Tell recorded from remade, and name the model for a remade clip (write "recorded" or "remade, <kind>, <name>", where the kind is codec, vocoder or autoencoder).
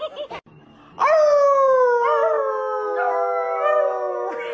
recorded